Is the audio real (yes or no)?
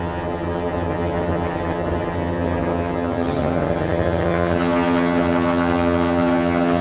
no